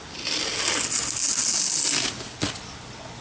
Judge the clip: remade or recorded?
recorded